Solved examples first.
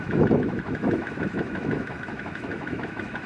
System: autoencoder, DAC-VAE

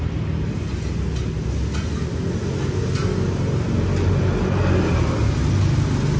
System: none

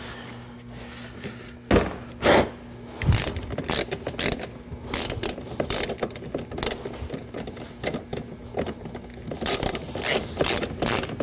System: none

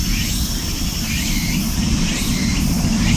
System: none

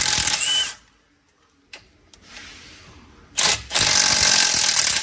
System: none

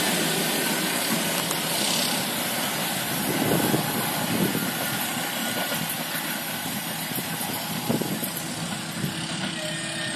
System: none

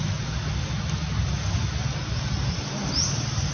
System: none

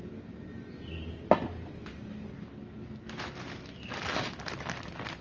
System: none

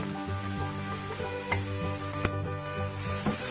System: none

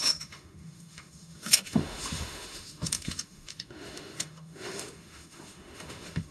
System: autoencoder, DAC-VAE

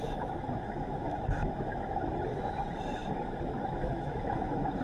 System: autoencoder, DAC-VAE